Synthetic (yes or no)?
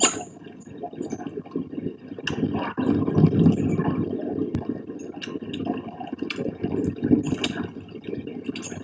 no